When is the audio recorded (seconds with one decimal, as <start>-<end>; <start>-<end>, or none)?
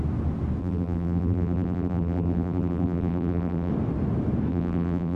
0.0-0.6; 3.7-4.5